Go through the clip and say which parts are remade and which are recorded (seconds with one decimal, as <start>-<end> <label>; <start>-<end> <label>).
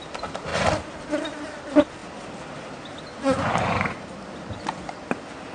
0.0-3.1 recorded; 3.1-4.0 remade; 4.0-5.5 recorded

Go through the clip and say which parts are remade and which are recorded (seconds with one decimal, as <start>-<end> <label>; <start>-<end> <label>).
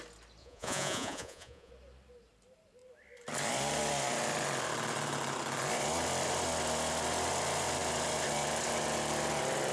0.0-0.4 recorded; 0.4-1.7 remade; 1.7-9.7 recorded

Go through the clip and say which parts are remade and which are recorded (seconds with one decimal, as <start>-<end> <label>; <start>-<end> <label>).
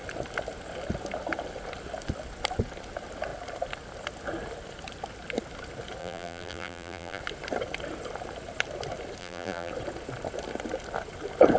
0.0-6.0 recorded; 6.0-7.2 remade; 7.2-9.2 recorded; 9.2-9.7 remade; 9.7-11.6 recorded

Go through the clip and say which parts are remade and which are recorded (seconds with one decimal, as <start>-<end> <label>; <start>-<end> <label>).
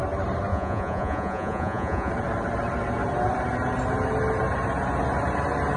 0.0-0.5 recorded; 0.5-2.1 remade; 2.1-5.8 recorded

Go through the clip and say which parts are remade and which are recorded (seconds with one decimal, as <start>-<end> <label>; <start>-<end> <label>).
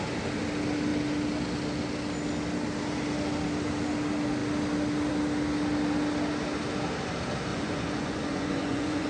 0.0-7.5 recorded; 7.5-9.1 remade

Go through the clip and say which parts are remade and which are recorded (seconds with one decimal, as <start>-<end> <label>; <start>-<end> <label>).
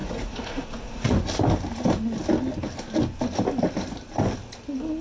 0.0-1.1 remade; 1.1-5.0 recorded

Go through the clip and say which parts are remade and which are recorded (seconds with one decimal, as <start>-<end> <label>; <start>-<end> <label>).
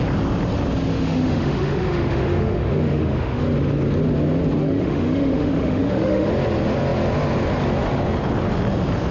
0.0-0.9 recorded; 0.9-3.4 remade; 3.4-4.6 recorded; 4.6-6.3 remade; 6.3-9.1 recorded